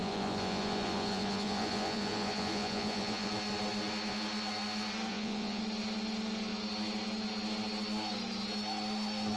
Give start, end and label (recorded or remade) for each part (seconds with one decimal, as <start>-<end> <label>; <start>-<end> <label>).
0.0-3.3 remade; 3.3-5.1 recorded; 5.1-5.6 remade; 5.6-9.4 recorded